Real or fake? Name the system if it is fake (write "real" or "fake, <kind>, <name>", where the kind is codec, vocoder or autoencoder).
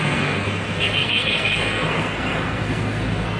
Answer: fake, codec, SNAC